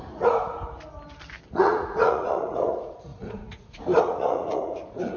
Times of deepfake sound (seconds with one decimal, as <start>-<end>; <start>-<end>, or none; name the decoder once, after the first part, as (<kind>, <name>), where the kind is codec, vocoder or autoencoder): 0.0-0.5 (vocoder, Vocos); 1.5-5.2